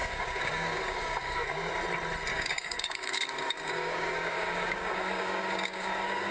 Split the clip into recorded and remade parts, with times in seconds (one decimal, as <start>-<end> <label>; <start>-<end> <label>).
0.0-1.7 remade; 1.7-2.3 recorded; 2.3-6.3 remade